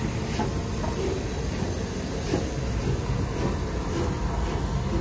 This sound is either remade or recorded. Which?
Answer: recorded